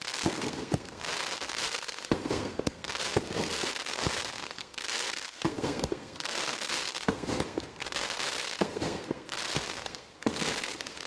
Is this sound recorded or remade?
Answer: remade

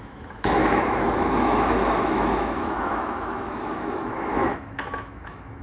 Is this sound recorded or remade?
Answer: remade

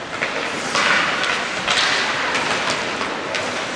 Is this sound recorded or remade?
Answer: recorded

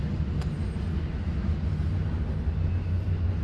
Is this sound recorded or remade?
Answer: recorded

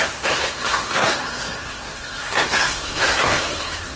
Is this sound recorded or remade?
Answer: remade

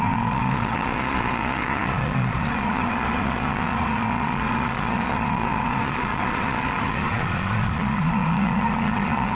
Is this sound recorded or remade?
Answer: remade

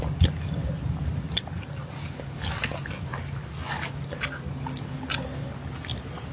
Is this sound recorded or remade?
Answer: recorded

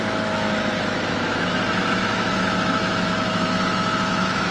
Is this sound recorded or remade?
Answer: remade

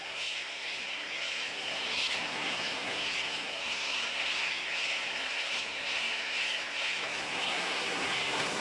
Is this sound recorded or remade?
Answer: remade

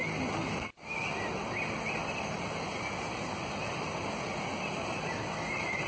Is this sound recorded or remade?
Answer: recorded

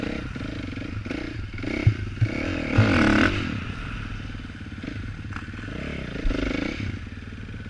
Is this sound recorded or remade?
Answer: recorded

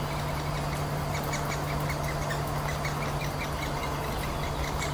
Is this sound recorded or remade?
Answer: recorded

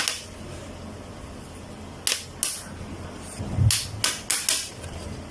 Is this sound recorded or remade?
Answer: recorded